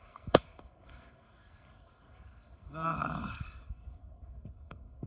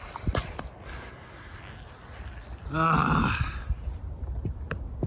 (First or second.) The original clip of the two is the second